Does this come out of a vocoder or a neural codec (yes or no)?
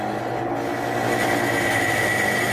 no